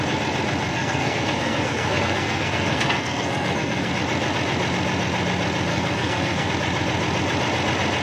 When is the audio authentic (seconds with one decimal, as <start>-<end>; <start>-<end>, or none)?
0.0-0.7; 3.9-5.7; 6.5-8.0